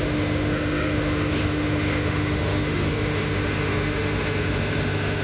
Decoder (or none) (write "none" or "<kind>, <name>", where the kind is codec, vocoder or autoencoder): autoencoder, DAC-VAE